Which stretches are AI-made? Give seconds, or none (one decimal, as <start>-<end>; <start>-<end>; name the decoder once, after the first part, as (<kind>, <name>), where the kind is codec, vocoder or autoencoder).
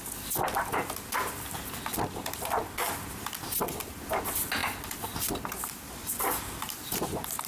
none